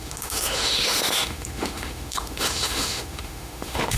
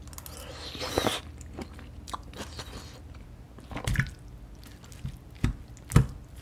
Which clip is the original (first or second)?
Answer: second